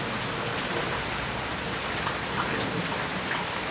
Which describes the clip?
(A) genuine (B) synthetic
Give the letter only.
A